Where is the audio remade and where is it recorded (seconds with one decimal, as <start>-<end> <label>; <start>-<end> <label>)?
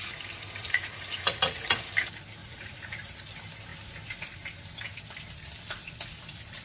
0.0-0.6 recorded; 0.6-1.8 remade; 1.8-2.4 recorded; 2.4-3.2 remade; 3.2-6.6 recorded